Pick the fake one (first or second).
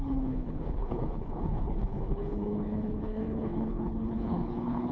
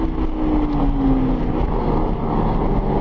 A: first